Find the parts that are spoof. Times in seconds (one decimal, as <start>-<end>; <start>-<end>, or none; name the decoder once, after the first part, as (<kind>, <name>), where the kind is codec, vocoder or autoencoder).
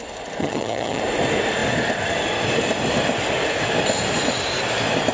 0.4-1.0 (vocoder, HiFi-GAN)